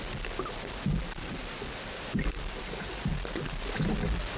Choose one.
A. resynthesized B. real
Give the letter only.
B